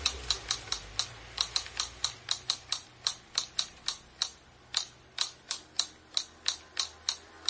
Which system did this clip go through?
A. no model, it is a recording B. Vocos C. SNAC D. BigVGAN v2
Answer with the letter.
A